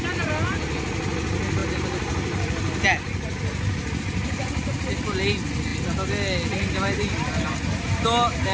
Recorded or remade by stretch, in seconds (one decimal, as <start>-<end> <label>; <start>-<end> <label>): 0.0-8.5 recorded